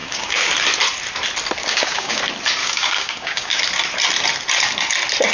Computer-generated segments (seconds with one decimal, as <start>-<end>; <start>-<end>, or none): 0.0-0.5; 1.6-2.2; 2.6-3.6